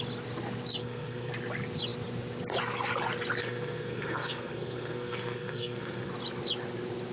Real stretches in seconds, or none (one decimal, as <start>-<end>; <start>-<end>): 0.0-0.8; 1.3-3.4; 6.1-7.1